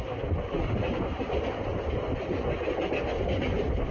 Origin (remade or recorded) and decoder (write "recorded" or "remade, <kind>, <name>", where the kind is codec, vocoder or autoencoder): recorded